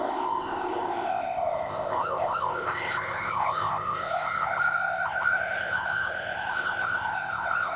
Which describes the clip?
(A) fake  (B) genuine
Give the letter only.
A